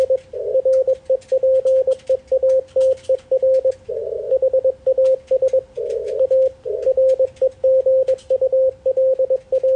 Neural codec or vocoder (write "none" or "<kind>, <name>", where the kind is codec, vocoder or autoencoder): none